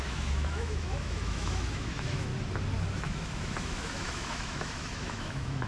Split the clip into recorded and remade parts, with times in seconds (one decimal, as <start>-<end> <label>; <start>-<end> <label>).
0.0-2.3 remade; 2.3-2.9 recorded; 2.9-5.7 remade